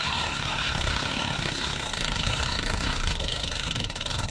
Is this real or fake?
fake